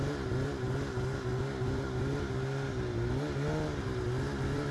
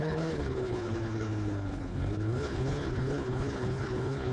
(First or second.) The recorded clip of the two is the first